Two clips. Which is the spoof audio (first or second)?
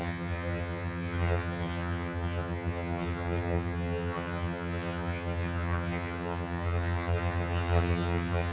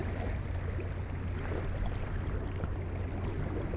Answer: first